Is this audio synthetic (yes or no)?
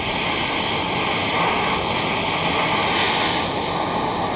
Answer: no